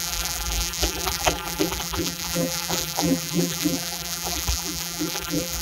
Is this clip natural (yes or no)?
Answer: no